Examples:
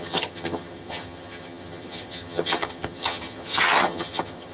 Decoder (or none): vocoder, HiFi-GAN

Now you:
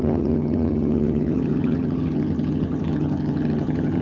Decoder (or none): vocoder, HiFi-GAN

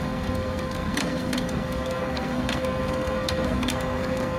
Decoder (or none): codec, SNAC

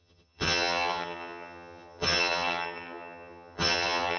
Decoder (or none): vocoder, HiFi-GAN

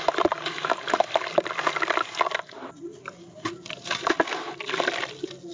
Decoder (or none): none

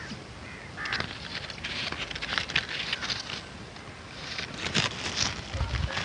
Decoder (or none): none